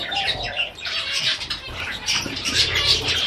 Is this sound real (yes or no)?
no